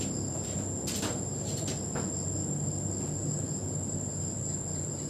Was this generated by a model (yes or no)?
no